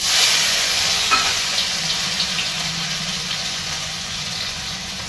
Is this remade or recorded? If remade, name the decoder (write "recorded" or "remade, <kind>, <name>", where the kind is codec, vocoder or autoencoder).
remade, vocoder, Vocos